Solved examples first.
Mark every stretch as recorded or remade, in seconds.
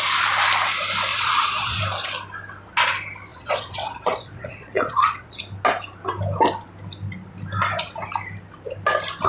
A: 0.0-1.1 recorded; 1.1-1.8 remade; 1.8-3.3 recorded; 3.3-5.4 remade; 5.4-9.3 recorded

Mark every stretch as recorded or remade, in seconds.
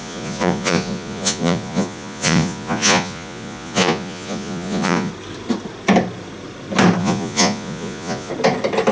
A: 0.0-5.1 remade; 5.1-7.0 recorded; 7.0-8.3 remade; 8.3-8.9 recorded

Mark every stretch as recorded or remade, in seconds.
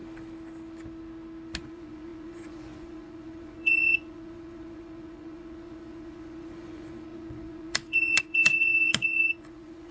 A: 0.0-1.6 recorded; 1.6-9.9 remade